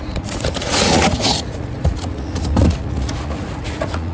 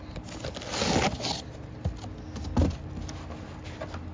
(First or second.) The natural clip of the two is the second